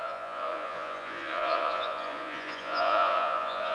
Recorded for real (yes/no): no